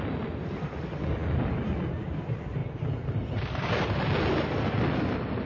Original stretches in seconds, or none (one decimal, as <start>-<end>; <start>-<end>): 0.0-5.5